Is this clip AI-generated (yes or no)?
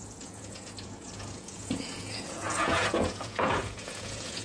yes